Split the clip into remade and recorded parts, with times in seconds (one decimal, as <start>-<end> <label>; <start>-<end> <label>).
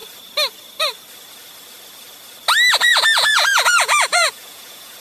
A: 0.0-2.8 recorded; 2.8-5.0 remade